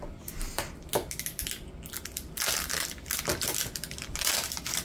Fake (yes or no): no